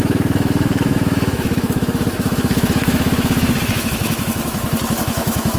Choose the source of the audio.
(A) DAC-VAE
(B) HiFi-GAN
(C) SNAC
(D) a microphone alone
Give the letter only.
A